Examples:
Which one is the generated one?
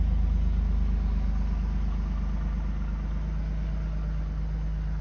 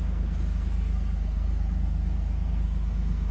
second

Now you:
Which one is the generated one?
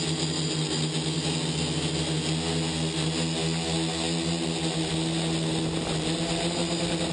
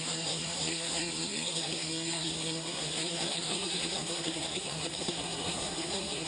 second